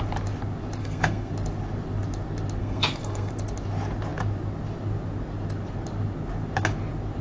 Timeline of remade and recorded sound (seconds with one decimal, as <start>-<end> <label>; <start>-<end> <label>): 0.0-0.8 recorded; 0.8-1.3 remade; 1.3-2.6 recorded; 2.6-3.3 remade; 3.3-7.2 recorded